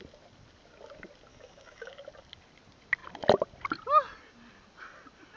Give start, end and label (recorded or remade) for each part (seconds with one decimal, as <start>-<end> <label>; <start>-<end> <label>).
0.0-1.3 recorded; 1.3-1.9 remade; 1.9-5.4 recorded